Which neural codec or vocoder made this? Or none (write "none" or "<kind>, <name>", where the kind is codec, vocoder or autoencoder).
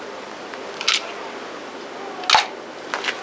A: none